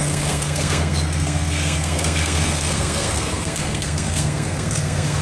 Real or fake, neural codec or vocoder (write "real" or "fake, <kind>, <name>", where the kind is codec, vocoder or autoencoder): fake, codec, SNAC